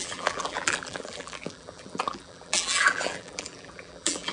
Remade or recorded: remade